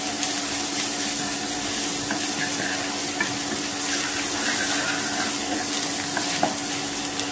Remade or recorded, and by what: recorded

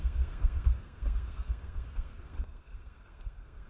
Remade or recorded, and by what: remade, codec, SNAC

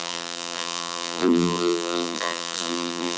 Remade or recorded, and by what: remade, vocoder, BigVGAN v2